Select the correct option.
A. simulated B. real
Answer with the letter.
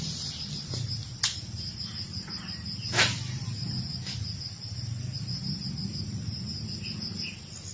B